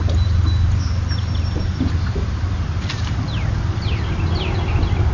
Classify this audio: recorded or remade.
recorded